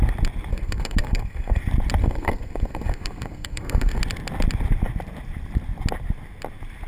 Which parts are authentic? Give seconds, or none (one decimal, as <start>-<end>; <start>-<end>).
0.0-0.5; 1.6-2.0; 4.0-6.9